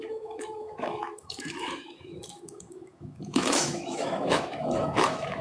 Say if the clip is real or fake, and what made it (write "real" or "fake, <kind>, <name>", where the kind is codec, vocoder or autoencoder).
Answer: fake, autoencoder, DAC-VAE